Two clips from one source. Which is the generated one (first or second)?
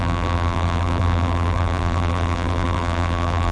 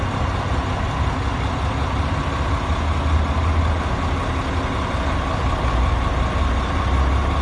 first